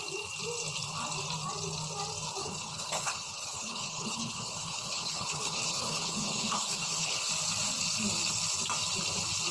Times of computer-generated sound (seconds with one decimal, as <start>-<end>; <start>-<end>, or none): 2.4-7.3